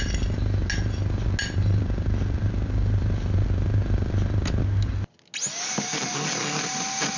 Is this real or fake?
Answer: real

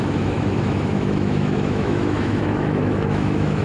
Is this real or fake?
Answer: fake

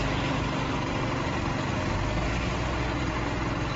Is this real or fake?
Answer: real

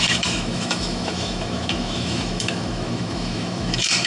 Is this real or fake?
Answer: fake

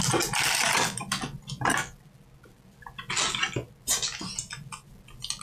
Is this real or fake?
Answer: real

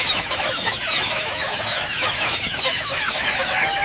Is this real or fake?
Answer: fake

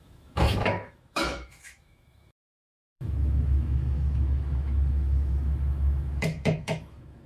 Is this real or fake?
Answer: fake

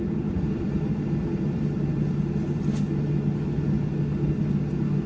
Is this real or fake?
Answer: real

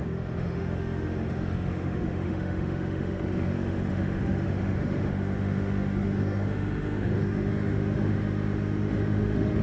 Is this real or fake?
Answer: fake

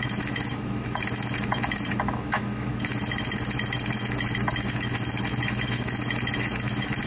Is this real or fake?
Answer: fake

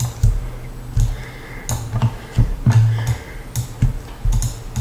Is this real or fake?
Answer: real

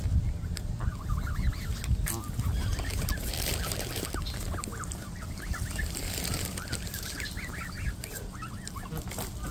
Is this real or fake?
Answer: real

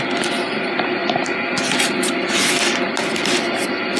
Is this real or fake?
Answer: real